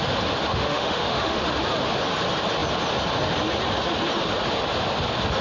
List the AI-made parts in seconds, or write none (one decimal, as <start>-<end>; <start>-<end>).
0.5-1.4